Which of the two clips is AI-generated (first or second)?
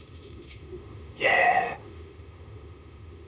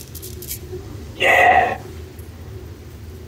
first